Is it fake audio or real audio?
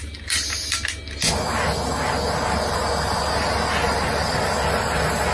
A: real